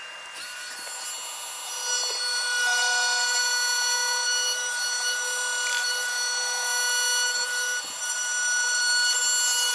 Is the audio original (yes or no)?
yes